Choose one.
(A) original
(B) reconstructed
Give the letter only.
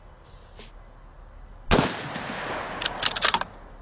A